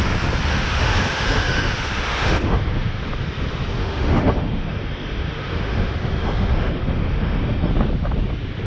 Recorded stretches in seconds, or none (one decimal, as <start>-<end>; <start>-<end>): 0.0-0.5; 3.0-3.8; 7.7-8.7